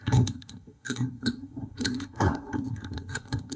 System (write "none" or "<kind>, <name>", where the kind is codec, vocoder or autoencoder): codec, SNAC